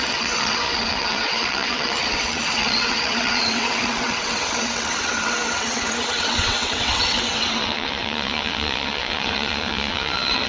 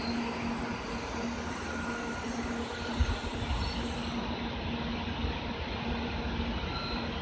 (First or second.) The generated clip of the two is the first